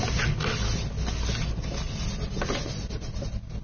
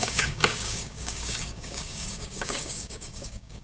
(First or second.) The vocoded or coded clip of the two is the second